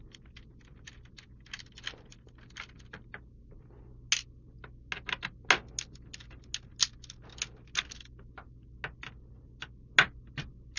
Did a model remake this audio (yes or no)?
no